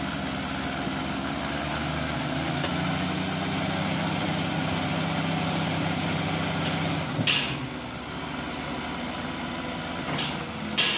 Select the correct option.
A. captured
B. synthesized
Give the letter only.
A